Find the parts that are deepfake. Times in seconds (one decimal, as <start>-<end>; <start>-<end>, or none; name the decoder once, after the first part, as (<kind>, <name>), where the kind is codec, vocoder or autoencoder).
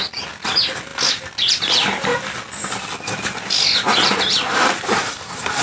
4.9-5.6 (codec, SNAC)